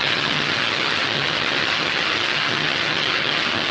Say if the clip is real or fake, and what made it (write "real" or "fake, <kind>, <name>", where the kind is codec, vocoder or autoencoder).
fake, vocoder, HiFi-GAN